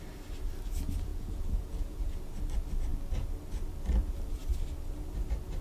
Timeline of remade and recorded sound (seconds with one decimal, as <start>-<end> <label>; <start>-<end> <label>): 0.0-1.1 recorded; 1.1-2.2 remade; 2.2-5.6 recorded